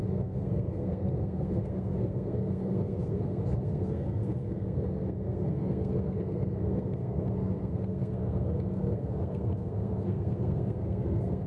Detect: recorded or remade remade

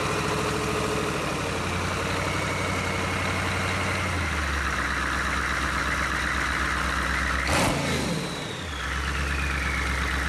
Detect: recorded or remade recorded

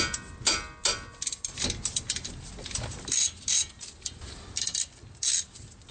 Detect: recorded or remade recorded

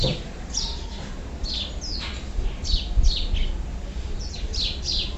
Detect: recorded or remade recorded